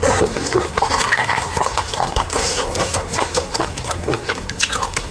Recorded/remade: remade